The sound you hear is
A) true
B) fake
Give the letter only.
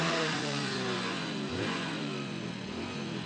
B